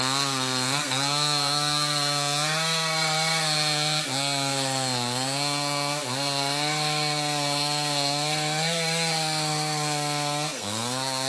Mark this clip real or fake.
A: fake